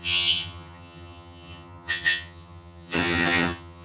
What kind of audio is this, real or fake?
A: fake